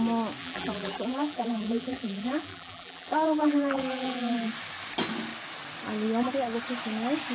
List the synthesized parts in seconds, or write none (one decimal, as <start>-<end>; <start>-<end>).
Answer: 0.4-4.5